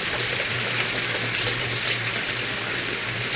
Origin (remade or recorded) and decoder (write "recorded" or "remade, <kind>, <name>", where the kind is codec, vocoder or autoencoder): recorded